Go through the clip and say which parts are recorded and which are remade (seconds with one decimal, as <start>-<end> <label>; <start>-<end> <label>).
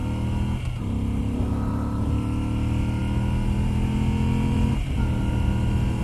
0.0-6.0 recorded